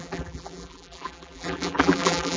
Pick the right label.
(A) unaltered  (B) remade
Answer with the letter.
B